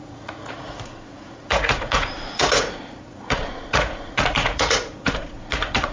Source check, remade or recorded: remade